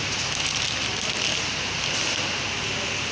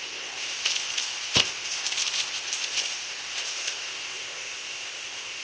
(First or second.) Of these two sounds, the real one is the first